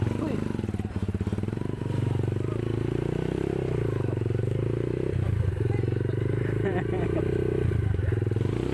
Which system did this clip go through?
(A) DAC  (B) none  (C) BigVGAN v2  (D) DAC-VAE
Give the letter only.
C